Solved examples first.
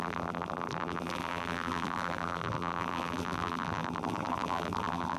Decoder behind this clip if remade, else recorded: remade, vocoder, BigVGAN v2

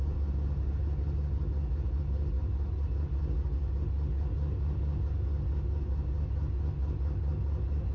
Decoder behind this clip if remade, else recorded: recorded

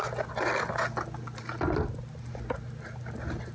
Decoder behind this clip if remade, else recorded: recorded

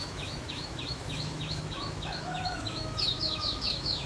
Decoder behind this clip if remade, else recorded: remade, autoencoder, DAC-VAE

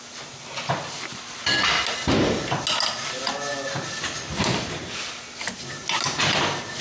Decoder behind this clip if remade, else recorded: recorded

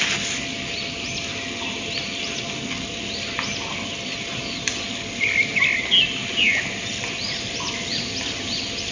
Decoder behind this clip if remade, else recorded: recorded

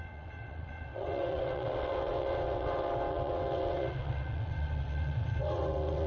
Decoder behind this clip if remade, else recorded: remade, vocoder, WaveNeXt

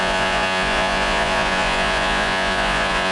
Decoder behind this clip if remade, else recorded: remade, vocoder, Vocos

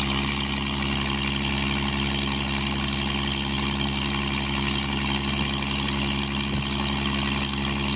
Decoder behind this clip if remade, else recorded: recorded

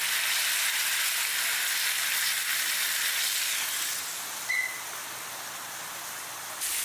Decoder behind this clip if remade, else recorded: recorded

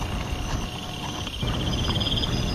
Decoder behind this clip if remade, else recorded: recorded